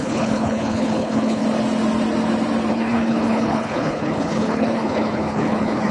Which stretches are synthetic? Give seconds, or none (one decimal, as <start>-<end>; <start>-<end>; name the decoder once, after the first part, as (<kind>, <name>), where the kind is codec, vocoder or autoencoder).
0.0-1.4 (codec, HILCodec); 2.7-5.9